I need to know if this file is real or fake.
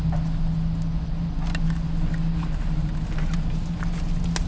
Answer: real